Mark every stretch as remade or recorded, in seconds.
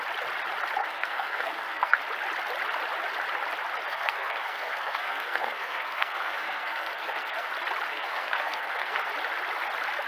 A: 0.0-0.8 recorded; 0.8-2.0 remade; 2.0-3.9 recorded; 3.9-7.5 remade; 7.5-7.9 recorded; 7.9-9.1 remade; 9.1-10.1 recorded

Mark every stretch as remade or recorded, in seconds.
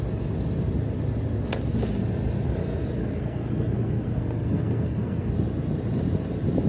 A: 0.0-3.0 recorded; 3.0-5.3 remade; 5.3-6.7 recorded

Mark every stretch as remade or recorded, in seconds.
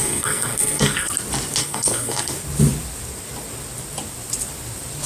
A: 0.0-1.1 remade; 1.1-1.6 recorded; 1.6-2.3 remade; 2.3-5.1 recorded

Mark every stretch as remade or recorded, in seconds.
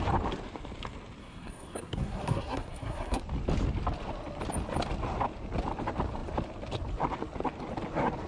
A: 0.0-1.2 recorded; 1.2-3.2 remade; 3.2-8.3 recorded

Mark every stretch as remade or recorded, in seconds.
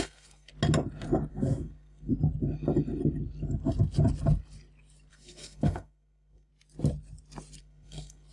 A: 0.0-0.5 remade; 0.5-1.3 recorded; 1.3-2.1 remade; 2.1-5.1 recorded; 5.1-6.5 remade; 6.5-7.6 recorded; 7.6-8.3 remade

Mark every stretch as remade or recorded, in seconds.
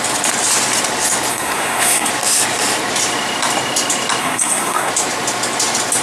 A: 0.0-1.3 recorded; 1.3-2.1 remade; 2.1-4.2 recorded; 4.2-4.9 remade; 4.9-6.0 recorded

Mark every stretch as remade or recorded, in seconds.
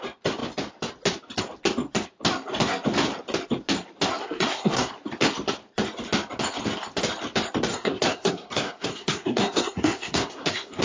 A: 0.0-4.2 recorded; 4.2-4.9 remade; 4.9-7.7 recorded; 7.7-10.8 remade